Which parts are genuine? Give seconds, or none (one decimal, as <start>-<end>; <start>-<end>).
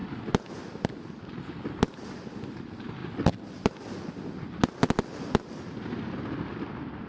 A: 0.0-7.1